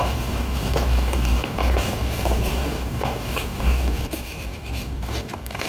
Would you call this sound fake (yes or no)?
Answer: yes